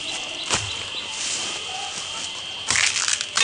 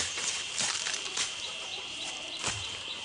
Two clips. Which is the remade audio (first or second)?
second